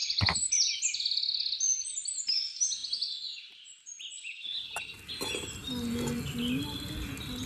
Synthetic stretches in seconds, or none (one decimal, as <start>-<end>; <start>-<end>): none